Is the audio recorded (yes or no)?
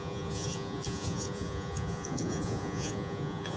no